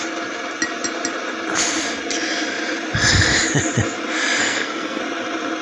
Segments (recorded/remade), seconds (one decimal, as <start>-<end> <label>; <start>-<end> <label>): 0.0-4.4 recorded; 4.4-5.0 remade; 5.0-5.6 recorded